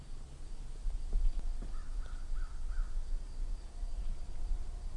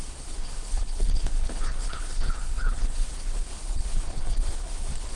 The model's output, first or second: second